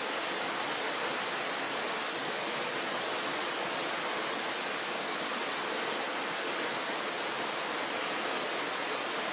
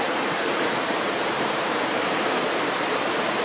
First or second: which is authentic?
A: first